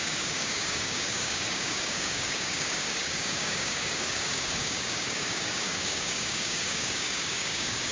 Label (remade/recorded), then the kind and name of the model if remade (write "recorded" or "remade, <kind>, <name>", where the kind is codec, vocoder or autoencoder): remade, codec, DAC